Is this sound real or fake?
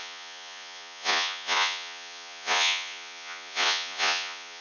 fake